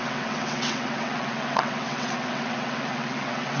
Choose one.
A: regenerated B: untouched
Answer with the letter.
A